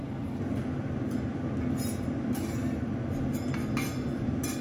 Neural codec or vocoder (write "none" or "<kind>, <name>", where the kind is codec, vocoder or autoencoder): none